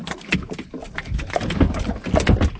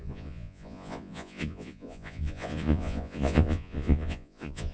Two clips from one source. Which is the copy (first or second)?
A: second